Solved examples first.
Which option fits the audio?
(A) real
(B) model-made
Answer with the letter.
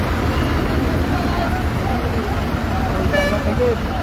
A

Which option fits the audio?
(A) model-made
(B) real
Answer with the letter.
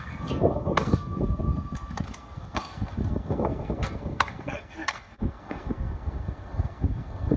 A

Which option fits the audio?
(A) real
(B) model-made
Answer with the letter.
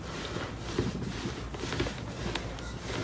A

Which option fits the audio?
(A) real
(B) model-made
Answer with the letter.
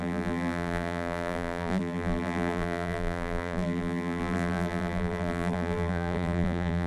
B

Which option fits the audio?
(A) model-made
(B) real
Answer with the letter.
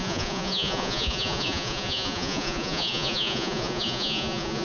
A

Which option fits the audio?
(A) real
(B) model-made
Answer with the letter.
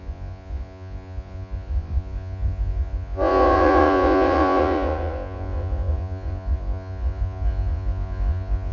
B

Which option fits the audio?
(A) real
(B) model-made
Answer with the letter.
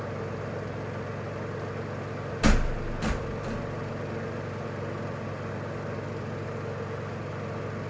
A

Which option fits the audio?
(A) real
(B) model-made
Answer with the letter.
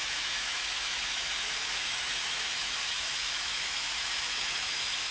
B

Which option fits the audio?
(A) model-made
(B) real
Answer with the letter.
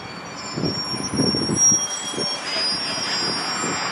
B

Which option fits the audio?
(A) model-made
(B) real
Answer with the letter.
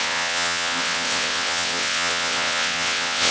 A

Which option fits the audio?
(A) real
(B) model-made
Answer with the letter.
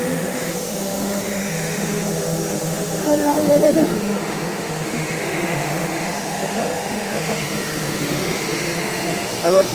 B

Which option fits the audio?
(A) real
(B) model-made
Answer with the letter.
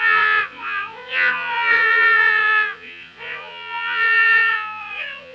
B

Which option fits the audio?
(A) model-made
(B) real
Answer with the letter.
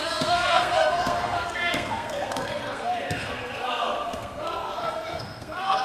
A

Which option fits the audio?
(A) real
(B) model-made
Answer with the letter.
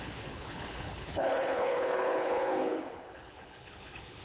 B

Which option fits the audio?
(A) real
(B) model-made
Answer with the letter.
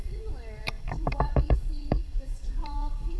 B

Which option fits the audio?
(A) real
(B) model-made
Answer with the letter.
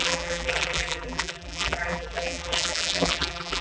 B